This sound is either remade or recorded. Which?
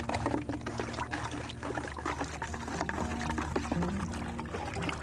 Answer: recorded